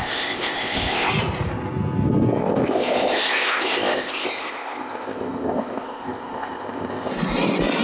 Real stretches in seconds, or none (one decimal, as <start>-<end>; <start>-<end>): 1.1-2.4; 7.1-7.8